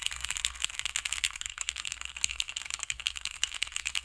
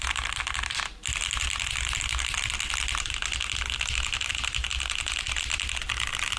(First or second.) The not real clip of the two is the first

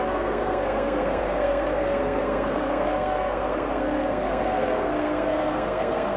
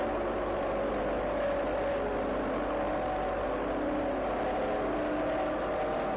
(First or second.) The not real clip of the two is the first